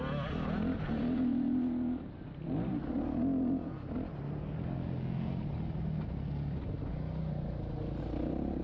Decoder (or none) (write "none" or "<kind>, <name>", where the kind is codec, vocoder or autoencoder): none